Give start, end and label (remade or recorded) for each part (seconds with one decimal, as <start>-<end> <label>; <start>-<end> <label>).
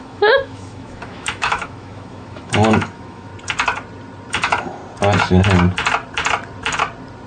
0.0-3.3 remade; 3.3-4.3 recorded; 4.3-4.8 remade; 4.8-7.3 recorded